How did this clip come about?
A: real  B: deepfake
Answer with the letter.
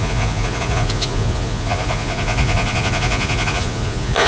B